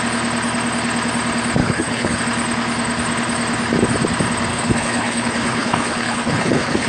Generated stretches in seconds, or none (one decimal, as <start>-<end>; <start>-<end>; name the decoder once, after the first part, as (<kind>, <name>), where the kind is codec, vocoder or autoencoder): 1.6-2.2 (codec, HILCodec); 4.5-6.9